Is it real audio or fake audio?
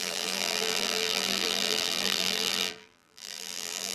fake